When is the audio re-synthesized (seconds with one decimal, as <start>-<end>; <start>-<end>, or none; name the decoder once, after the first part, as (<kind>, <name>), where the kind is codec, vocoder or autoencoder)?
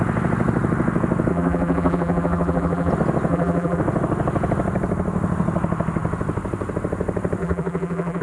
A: 1.3-2.9 (vocoder, BigVGAN v2); 3.3-3.8; 7.4-8.2